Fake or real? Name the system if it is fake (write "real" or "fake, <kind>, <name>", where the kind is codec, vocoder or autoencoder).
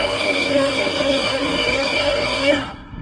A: fake, codec, SNAC